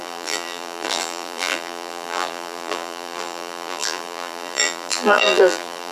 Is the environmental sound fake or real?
fake